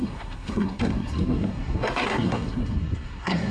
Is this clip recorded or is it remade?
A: remade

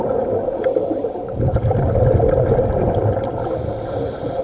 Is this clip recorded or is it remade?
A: recorded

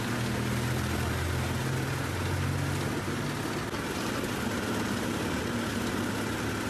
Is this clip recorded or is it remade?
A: recorded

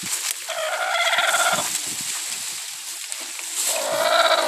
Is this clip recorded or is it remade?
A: recorded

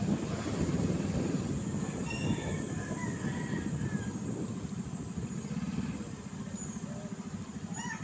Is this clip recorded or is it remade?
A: recorded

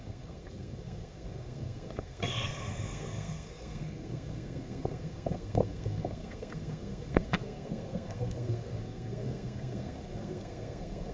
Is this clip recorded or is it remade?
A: remade